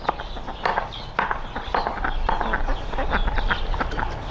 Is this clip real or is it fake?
real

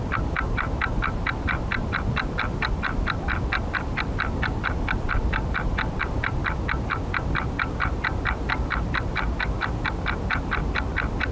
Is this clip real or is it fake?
real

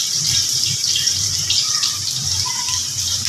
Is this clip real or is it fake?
fake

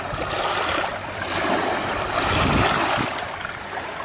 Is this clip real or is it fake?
real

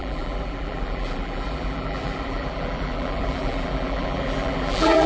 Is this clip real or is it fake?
fake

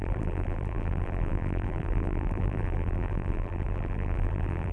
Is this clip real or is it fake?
fake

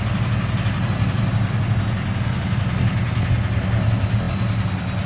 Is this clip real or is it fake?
real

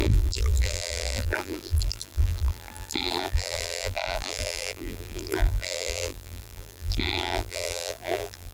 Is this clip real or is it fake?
fake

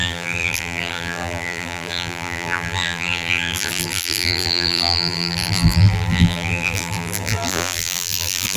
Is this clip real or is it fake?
fake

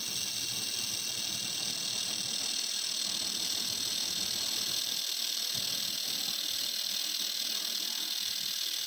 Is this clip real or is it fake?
real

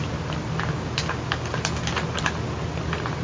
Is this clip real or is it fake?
fake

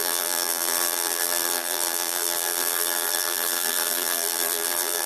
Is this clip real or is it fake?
fake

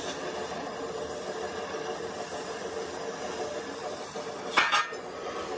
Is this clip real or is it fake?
real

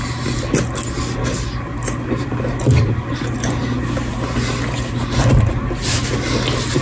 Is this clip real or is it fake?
real